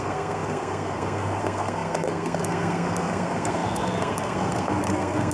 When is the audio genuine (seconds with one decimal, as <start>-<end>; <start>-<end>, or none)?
none